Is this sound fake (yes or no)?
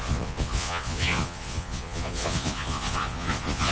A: yes